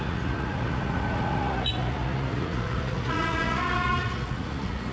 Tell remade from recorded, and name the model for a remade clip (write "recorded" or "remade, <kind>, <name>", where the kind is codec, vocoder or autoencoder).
remade, vocoder, Vocos